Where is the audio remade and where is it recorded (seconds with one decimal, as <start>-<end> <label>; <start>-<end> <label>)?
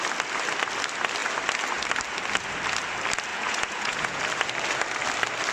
0.0-3.3 recorded; 3.3-4.2 remade; 4.2-5.5 recorded